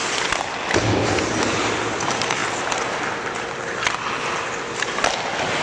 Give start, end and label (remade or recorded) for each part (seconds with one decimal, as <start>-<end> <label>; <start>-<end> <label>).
0.0-1.0 remade; 1.0-5.6 recorded